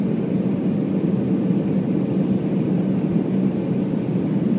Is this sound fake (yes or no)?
no